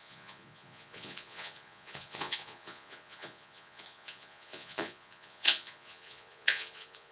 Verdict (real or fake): fake